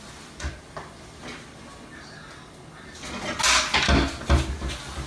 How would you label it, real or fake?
real